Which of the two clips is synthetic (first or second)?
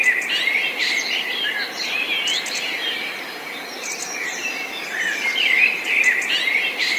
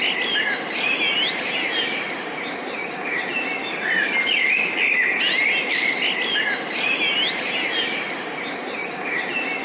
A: first